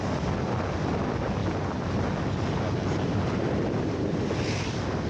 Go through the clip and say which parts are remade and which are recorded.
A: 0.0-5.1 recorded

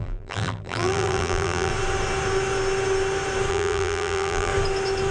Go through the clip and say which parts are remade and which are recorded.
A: 0.0-1.7 remade; 1.7-3.5 recorded; 3.5-4.5 remade; 4.5-5.1 recorded